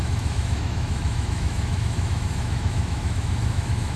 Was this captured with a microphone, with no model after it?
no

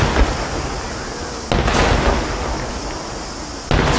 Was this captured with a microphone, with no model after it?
yes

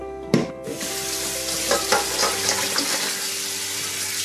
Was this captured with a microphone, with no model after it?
yes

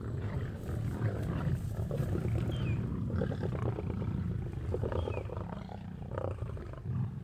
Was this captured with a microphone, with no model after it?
yes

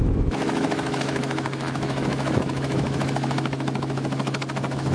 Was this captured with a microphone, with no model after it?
no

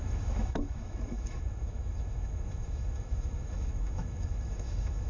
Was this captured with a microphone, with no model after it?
no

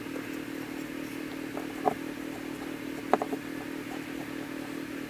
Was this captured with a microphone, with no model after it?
yes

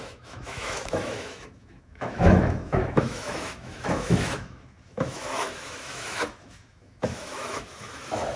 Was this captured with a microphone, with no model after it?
no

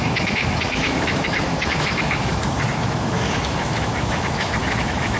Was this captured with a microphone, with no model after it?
no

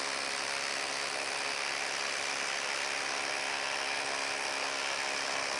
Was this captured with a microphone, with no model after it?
yes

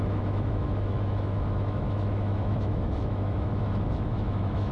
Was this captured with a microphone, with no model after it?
no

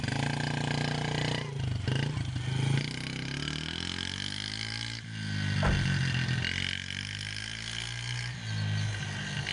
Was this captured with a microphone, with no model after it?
yes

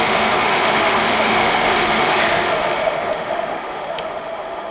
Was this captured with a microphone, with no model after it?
no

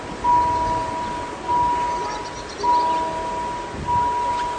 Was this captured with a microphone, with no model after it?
yes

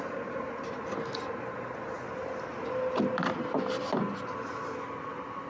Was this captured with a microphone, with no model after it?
yes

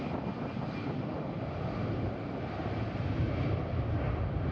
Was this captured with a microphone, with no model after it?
yes